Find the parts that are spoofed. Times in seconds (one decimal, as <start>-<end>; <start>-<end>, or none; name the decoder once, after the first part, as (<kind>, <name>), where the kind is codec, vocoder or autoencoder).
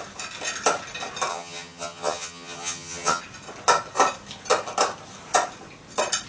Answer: 1.3-3.2 (vocoder, HiFi-GAN)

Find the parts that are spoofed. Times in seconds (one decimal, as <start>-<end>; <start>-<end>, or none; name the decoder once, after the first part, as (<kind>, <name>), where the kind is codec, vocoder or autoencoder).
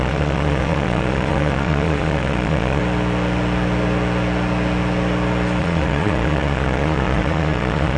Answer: 0.0-2.8 (vocoder, Vocos); 5.6-8.0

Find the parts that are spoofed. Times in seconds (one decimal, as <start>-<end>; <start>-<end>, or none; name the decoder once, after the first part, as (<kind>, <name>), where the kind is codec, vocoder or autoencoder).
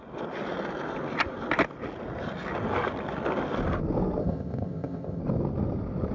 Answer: 4.2-5.2 (codec, ZipCodec)